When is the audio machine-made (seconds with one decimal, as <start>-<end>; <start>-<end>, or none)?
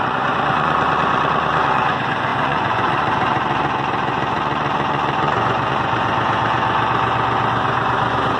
0.0-8.4